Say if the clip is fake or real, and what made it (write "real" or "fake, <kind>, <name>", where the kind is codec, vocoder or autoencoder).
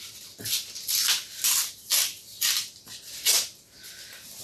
real